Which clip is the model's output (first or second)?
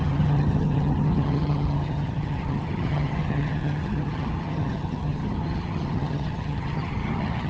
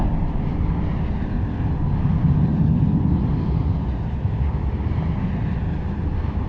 first